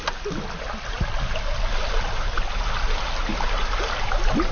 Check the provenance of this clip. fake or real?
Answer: real